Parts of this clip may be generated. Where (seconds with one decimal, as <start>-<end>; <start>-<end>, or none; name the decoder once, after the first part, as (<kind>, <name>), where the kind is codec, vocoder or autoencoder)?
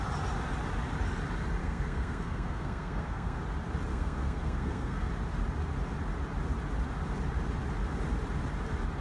1.6-3.4 (codec, SNAC); 3.9-5.1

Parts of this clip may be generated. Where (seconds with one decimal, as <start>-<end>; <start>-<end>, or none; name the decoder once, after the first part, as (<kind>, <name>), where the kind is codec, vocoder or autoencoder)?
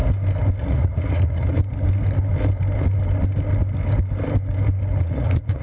0.6-1.6 (vocoder, Vocos); 5.0-5.6